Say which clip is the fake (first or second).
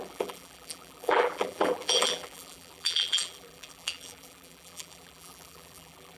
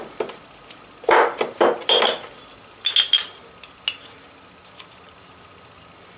first